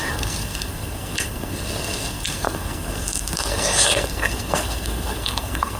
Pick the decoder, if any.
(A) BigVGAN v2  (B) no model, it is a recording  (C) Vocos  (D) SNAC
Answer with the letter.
D